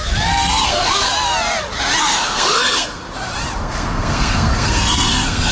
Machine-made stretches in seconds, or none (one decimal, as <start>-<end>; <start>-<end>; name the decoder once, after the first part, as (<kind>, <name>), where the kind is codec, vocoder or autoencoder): 0.0-1.1 (codec, SNAC); 2.0-3.0; 3.6-5.5